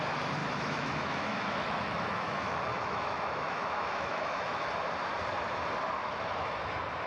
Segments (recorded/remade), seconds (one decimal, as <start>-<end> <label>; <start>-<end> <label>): 0.0-0.4 recorded; 0.4-4.7 remade; 4.7-6.0 recorded; 6.0-6.6 remade; 6.6-7.1 recorded